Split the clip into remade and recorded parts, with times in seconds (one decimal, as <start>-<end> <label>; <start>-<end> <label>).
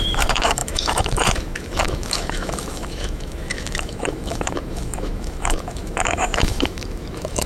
0.0-7.5 remade